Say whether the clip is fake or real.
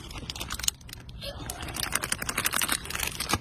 fake